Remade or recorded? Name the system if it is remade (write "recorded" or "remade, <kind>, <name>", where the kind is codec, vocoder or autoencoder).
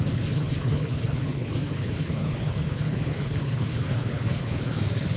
remade, codec, HILCodec